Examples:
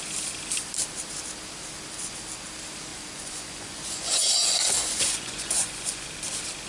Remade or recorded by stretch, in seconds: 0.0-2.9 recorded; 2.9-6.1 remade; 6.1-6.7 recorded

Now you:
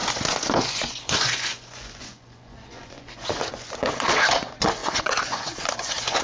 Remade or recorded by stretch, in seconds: 0.0-6.2 remade

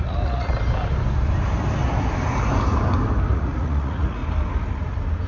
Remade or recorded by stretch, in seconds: 0.0-0.5 remade; 0.5-3.3 recorded; 3.3-4.2 remade; 4.2-5.3 recorded

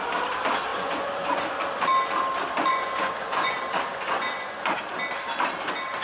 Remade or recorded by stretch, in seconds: 0.0-0.7 recorded; 0.7-1.6 remade; 1.6-2.6 recorded; 2.6-3.5 remade; 3.5-3.9 recorded; 3.9-4.7 remade; 4.7-6.0 recorded

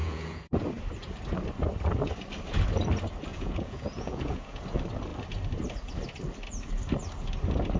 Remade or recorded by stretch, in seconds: 0.0-0.7 remade; 0.7-3.3 recorded; 3.3-4.6 remade; 4.6-7.8 recorded